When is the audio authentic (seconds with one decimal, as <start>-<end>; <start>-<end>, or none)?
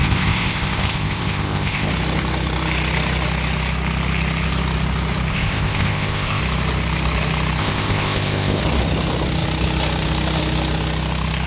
1.9-5.3; 6.4-7.6; 8.6-11.5